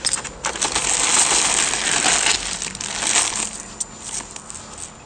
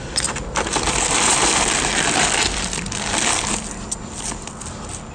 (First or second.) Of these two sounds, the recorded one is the first